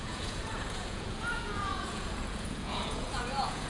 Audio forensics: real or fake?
fake